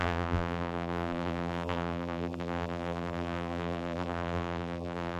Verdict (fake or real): fake